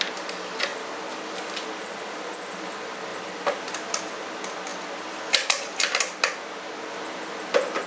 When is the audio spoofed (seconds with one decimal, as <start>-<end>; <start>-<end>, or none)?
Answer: none